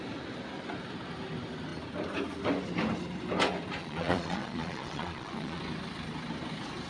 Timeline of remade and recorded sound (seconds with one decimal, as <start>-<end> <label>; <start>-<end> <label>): 0.0-3.8 recorded; 3.8-5.6 remade; 5.6-6.9 recorded

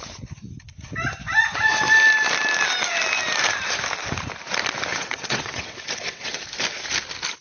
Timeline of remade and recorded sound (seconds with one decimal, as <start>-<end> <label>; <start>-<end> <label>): 0.0-4.9 recorded; 4.9-6.4 remade; 6.4-7.4 recorded

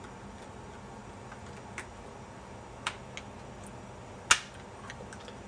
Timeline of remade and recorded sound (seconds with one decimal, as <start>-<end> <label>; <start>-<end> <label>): 0.0-5.5 recorded

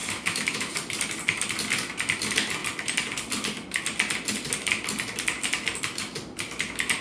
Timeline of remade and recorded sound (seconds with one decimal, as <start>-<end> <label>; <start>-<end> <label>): 0.0-0.7 remade; 0.7-7.0 recorded

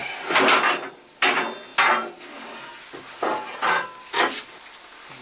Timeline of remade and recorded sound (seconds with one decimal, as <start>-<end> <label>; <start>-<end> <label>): 0.0-5.2 recorded

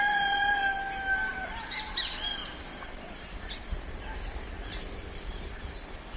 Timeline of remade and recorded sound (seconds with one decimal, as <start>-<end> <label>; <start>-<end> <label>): 0.0-1.3 recorded; 1.3-3.5 remade; 3.5-6.2 recorded

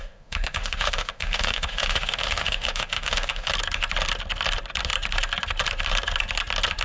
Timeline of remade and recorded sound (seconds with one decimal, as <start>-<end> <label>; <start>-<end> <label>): 0.0-3.5 remade; 3.5-6.8 recorded

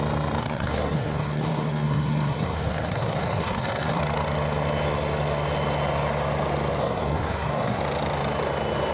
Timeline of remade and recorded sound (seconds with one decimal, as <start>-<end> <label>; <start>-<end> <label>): 0.0-0.4 recorded; 0.4-4.0 remade; 4.0-6.8 recorded; 6.8-7.8 remade; 7.8-8.9 recorded